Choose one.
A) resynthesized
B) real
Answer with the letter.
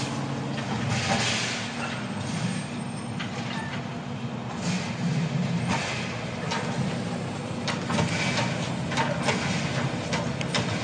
B